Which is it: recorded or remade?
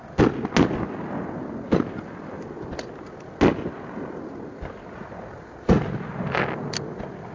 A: recorded